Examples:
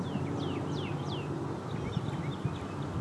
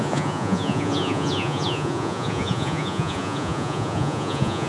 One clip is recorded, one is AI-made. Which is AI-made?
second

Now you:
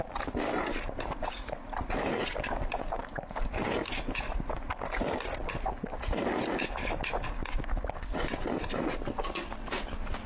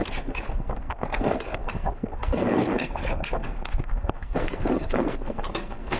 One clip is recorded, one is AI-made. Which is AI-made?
second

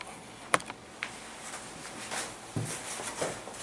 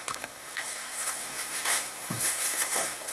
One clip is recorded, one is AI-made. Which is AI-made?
second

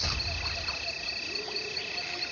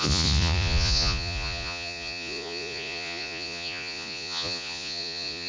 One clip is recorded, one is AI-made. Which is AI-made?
second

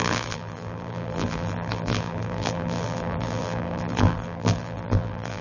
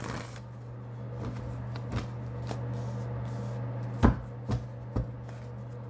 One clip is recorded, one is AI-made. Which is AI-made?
first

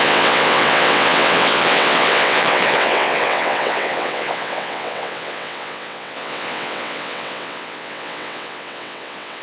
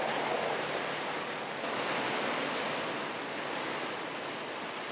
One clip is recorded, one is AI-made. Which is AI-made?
first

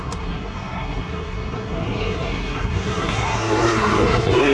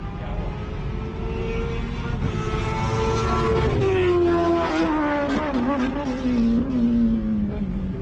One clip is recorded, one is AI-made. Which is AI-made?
first